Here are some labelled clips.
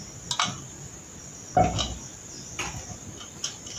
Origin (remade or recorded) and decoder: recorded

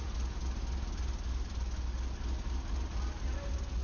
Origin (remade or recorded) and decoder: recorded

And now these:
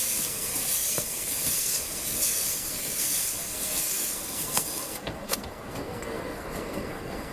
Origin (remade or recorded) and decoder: remade, codec, SNAC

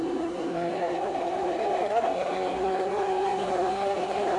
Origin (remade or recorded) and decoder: remade, codec, SNAC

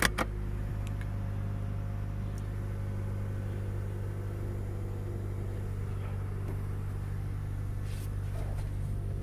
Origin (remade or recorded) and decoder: recorded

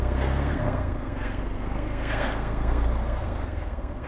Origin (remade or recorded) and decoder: remade, codec, SNAC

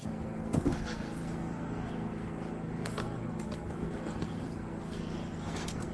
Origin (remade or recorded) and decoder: remade, codec, SNAC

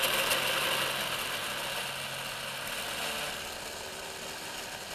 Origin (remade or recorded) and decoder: recorded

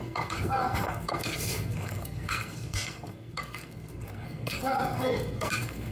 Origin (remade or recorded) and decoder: remade, codec, SNAC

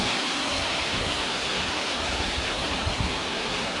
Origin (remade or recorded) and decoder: remade, codec, SNAC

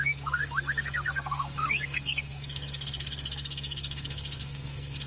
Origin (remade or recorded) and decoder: remade, codec, SNAC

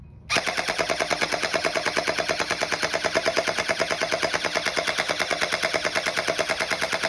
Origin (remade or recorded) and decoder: recorded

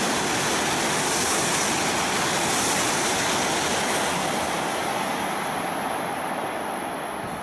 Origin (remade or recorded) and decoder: recorded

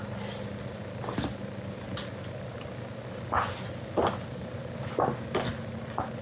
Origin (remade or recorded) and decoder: recorded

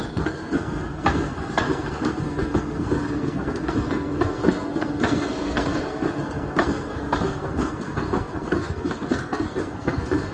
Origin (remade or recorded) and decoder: remade, codec, SNAC